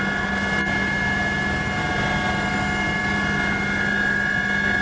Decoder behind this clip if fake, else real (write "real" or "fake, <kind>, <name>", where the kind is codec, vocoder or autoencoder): real